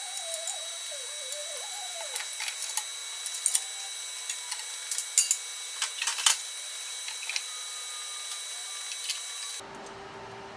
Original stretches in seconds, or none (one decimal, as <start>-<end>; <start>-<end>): 0.0-1.4; 2.2-6.1; 6.9-9.0; 9.5-10.6